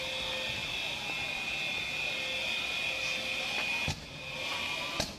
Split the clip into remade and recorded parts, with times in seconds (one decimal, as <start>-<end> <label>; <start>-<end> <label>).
0.0-5.2 recorded